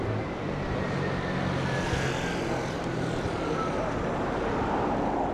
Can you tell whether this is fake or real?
real